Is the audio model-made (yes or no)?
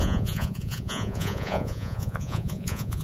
yes